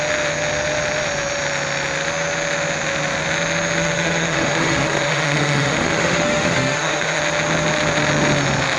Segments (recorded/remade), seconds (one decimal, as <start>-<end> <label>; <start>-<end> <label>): 0.0-3.8 recorded; 3.8-7.2 remade; 7.2-8.8 recorded